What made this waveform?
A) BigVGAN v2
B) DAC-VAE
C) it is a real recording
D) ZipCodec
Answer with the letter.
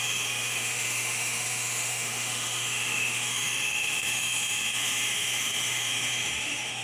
B